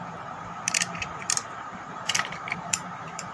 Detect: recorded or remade remade